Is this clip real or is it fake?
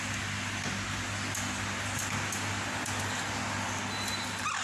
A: real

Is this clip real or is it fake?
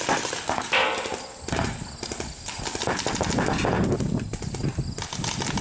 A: real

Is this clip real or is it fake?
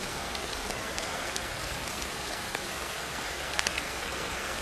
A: fake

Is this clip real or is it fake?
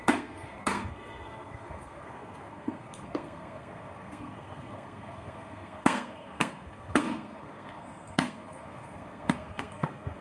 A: fake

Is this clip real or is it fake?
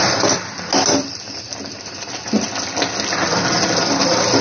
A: real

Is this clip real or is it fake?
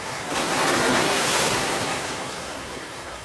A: fake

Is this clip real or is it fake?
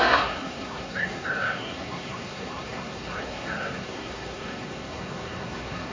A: fake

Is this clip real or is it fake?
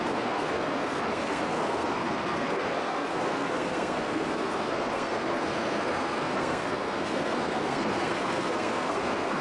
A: fake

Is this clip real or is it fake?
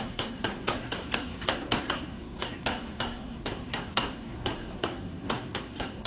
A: fake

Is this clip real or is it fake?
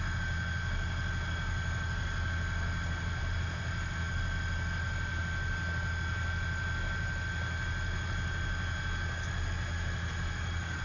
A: real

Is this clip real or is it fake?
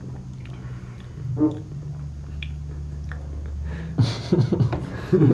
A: real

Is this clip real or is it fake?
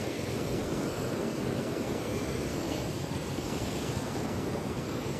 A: fake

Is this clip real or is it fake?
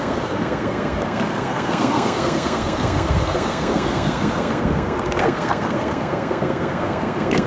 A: fake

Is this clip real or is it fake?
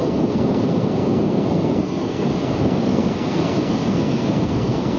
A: fake